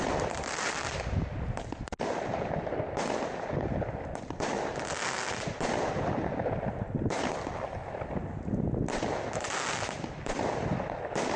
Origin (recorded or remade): recorded